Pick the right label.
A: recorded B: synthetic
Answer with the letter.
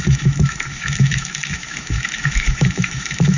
B